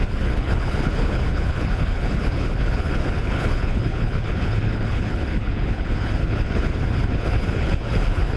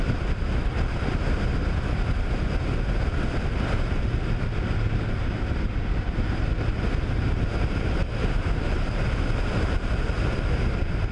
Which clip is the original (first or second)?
second